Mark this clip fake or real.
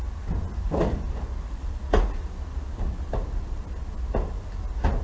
real